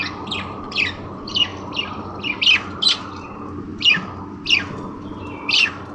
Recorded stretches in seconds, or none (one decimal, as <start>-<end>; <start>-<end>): none